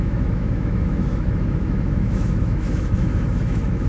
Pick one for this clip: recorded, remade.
remade